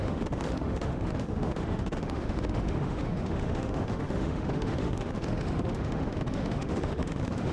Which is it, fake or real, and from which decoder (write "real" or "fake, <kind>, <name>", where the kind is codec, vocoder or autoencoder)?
fake, autoencoder, DAC-VAE